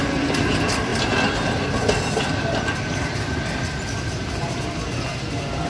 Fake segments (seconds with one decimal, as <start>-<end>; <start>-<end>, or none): none